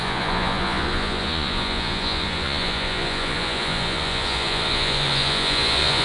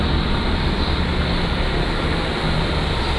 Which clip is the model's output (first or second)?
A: first